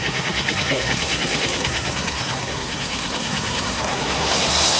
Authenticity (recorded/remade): remade